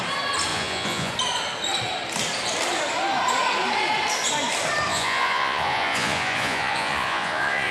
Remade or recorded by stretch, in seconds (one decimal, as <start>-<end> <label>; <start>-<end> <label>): 0.0-0.5 recorded; 0.5-1.1 remade; 1.1-4.9 recorded; 4.9-7.7 remade

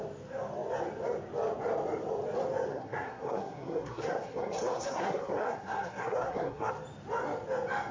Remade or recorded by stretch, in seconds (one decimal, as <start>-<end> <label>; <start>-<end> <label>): 0.0-2.7 recorded; 2.7-6.7 remade; 6.7-7.9 recorded

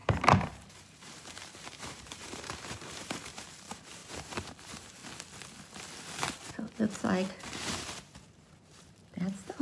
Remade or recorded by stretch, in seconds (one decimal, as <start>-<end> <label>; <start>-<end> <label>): 0.0-5.0 remade; 5.0-7.3 recorded; 7.3-9.6 remade

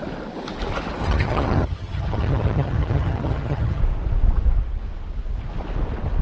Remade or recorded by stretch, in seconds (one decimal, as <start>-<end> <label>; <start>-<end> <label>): 0.0-1.0 recorded; 1.0-3.8 remade; 3.8-6.2 recorded

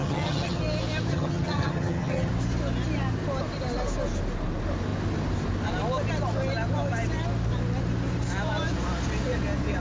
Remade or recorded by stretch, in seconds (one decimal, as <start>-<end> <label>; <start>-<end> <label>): 0.0-0.6 remade; 0.6-1.1 recorded; 1.1-2.3 remade; 2.3-9.8 recorded

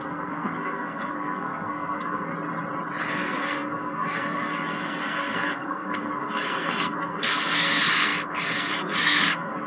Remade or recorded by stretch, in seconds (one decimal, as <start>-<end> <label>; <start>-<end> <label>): 0.0-2.3 remade; 2.3-3.0 recorded; 3.0-9.7 remade